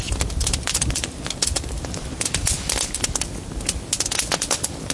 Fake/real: real